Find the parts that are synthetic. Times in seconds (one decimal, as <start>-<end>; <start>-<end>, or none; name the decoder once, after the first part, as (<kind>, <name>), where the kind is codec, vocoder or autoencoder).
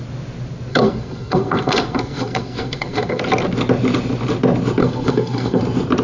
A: 0.7-3.2 (codec, SNAC); 4.8-5.6